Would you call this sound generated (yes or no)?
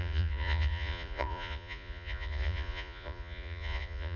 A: yes